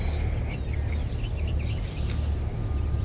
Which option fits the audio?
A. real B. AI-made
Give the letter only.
A